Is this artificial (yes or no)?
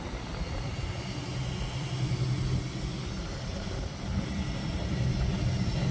no